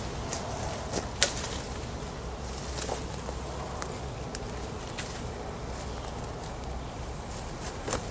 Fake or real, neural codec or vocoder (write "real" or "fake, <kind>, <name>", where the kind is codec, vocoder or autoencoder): real